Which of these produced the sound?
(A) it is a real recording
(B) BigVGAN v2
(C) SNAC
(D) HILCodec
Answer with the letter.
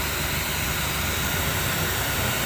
A